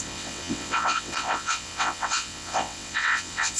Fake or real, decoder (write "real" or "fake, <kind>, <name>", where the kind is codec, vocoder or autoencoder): fake, vocoder, WaveNeXt